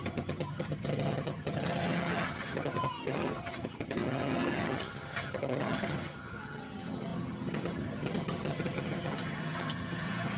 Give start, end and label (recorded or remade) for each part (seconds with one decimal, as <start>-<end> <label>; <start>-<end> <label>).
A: 0.0-10.4 remade